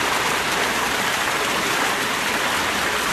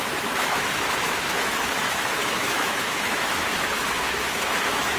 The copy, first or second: second